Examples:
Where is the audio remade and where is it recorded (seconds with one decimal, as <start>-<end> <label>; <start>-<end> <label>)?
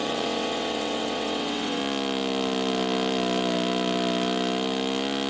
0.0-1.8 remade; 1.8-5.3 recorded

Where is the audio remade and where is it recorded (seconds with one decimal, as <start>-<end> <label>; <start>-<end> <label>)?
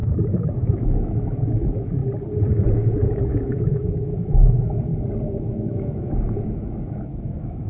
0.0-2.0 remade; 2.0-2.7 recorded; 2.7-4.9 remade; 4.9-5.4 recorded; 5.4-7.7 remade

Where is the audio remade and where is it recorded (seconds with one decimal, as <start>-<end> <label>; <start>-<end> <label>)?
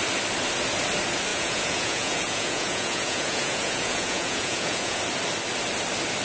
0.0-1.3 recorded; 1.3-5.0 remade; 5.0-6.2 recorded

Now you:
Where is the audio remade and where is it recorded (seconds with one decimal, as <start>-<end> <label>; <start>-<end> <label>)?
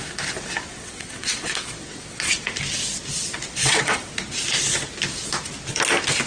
0.0-0.7 recorded; 0.7-2.3 remade; 2.3-3.6 recorded; 3.6-4.1 remade; 4.1-6.3 recorded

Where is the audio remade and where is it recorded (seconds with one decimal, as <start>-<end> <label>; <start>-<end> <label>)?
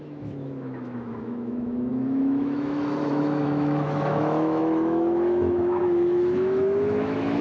0.0-7.4 remade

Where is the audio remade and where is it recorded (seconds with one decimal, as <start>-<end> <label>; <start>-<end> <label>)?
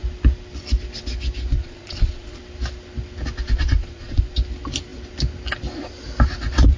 0.0-1.5 recorded; 1.5-2.4 remade; 2.4-3.5 recorded; 3.5-4.3 remade; 4.3-6.8 recorded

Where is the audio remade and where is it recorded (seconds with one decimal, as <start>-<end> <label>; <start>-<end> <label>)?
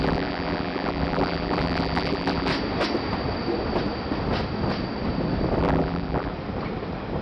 0.0-2.5 remade; 2.5-5.6 recorded; 5.6-6.3 remade; 6.3-7.2 recorded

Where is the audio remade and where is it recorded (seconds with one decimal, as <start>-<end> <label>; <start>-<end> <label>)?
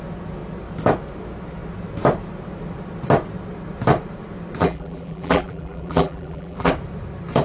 0.0-4.6 recorded; 4.6-6.7 remade; 6.7-7.4 recorded